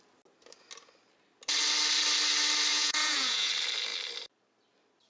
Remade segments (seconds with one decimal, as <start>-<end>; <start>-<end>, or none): 2.7-3.5